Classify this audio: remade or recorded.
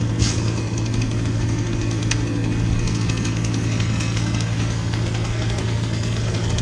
remade